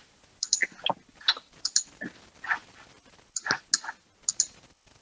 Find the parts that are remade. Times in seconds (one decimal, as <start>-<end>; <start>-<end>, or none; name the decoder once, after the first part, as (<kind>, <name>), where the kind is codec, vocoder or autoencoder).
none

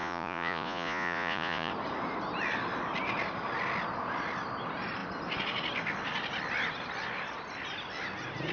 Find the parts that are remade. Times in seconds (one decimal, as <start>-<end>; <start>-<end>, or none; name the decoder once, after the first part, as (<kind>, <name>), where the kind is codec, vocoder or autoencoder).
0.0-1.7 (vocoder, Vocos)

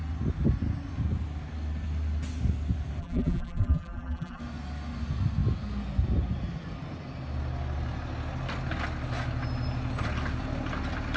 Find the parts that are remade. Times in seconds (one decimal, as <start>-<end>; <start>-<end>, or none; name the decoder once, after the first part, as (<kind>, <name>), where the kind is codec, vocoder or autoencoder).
3.0-4.4 (vocoder, BigVGAN v2)

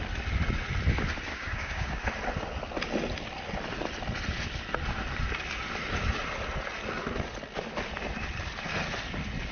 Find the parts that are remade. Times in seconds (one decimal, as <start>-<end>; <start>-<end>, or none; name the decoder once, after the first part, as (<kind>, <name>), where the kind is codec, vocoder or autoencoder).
1.3-2.0 (codec, DAC)